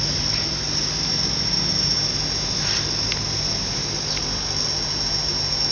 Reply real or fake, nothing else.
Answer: real